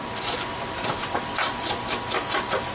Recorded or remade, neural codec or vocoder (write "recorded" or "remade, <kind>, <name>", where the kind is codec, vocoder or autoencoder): remade, vocoder, BigVGAN v2